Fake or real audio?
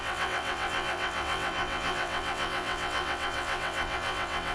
fake